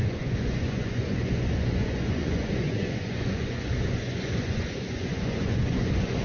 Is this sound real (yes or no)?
no